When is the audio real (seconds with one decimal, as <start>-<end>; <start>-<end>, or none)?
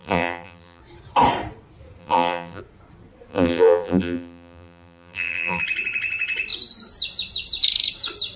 0.8-2.0; 2.6-3.3; 5.6-8.4